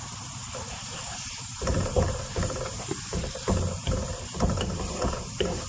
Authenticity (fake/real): fake